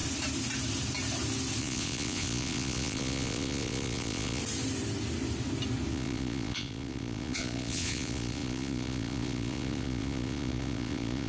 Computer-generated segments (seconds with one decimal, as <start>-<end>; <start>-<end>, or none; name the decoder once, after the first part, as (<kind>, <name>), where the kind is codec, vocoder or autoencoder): 1.6-4.4 (vocoder, Vocos); 5.9-11.3